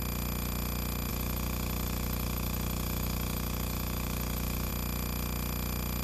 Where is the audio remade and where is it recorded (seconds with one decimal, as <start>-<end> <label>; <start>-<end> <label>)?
0.0-1.1 recorded; 1.1-4.7 remade; 4.7-6.0 recorded